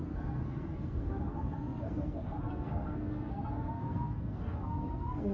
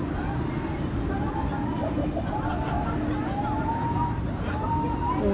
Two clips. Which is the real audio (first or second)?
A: second